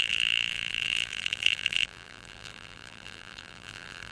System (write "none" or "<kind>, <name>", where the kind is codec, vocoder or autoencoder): vocoder, BigVGAN v2